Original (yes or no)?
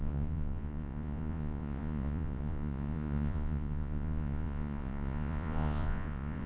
no